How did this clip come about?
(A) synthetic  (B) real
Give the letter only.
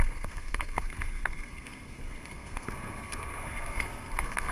A